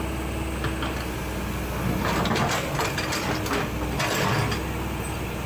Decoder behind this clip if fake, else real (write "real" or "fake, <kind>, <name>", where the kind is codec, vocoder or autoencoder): real